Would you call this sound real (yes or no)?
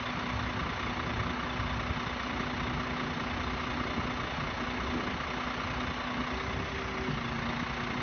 yes